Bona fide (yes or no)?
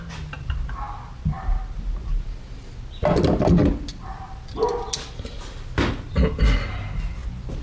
yes